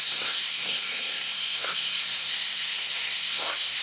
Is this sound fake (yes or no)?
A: yes